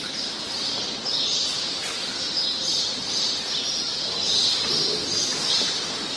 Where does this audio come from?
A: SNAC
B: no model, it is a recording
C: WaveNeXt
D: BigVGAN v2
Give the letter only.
B